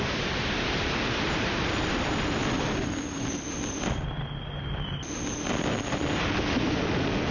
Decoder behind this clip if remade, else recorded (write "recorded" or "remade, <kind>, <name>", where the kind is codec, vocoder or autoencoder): remade, vocoder, BigVGAN v2